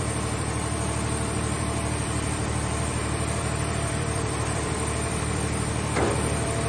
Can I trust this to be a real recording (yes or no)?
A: no